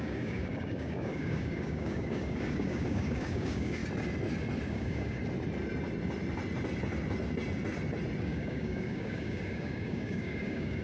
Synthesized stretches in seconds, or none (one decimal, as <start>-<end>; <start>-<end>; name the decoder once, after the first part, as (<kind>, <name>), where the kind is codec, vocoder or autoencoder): 0.0-3.8 (codec, DAC); 4.7-5.2; 8.2-10.8